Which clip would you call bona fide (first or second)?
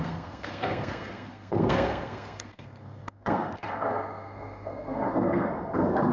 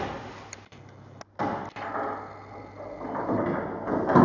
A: second